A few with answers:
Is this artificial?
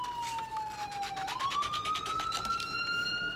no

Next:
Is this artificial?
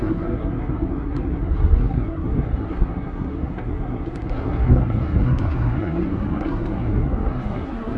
yes